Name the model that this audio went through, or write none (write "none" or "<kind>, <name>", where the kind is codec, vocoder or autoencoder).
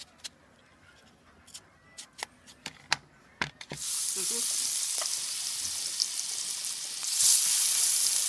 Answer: none